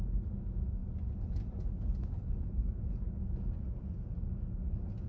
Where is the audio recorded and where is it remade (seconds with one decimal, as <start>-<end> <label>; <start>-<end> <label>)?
0.0-5.1 recorded